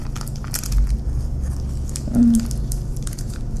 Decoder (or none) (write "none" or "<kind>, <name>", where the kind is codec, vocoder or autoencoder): none